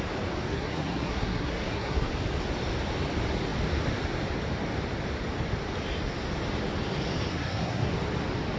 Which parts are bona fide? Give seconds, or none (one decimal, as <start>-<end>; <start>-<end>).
0.0-0.5; 2.1-7.3; 7.9-8.6